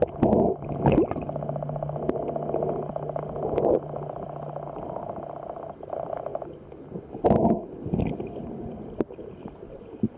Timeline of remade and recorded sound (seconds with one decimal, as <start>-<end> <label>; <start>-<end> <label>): 0.0-10.2 recorded